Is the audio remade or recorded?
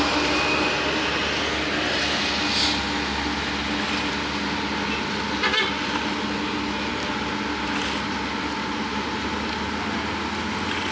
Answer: recorded